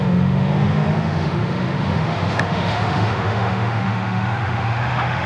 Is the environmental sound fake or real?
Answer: fake